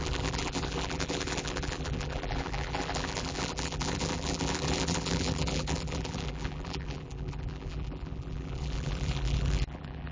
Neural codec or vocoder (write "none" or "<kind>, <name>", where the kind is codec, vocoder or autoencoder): vocoder, BigVGAN v2